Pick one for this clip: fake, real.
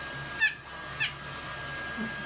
real